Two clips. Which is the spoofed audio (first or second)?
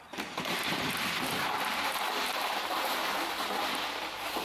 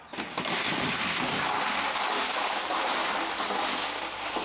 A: first